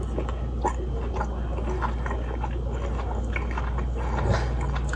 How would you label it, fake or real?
real